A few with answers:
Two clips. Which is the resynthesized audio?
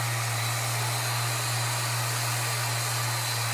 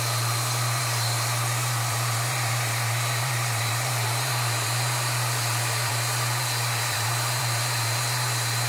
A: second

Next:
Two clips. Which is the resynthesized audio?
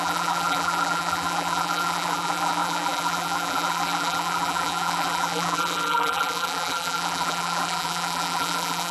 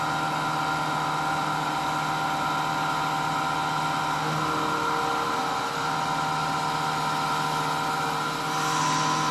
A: first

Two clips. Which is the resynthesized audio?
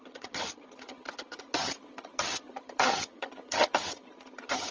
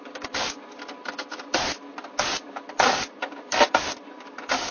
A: first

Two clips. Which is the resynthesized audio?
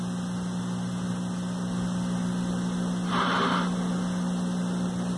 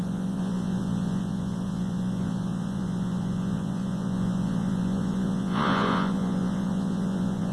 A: second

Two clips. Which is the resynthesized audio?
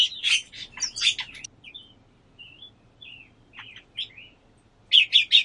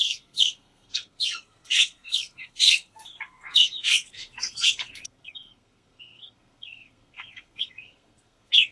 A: second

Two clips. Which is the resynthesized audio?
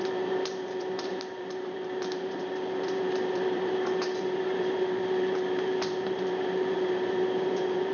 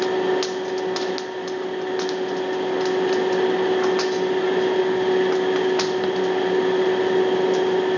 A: first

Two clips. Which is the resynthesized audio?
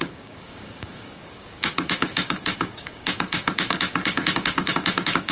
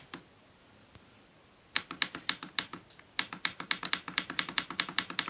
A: first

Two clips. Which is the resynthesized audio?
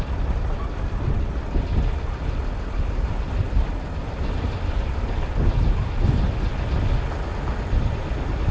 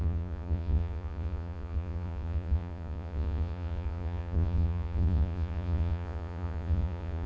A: second